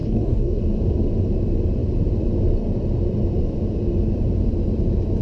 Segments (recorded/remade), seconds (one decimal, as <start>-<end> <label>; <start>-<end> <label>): 0.0-0.6 remade; 0.6-5.2 recorded